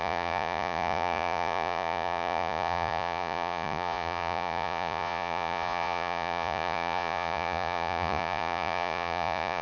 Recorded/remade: remade